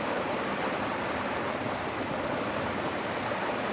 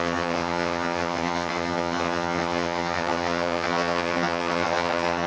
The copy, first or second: second